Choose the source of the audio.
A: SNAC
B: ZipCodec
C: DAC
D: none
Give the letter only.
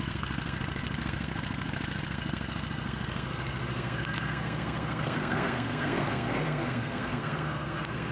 A